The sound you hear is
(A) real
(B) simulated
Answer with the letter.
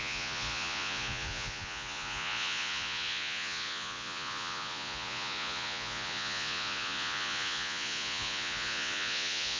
B